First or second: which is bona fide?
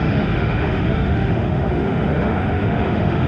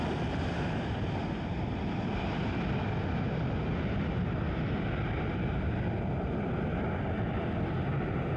second